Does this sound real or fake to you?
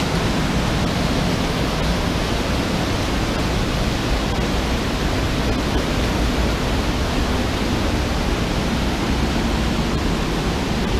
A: real